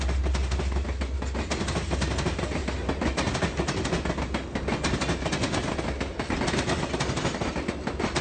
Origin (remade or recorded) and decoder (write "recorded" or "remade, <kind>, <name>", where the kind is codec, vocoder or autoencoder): recorded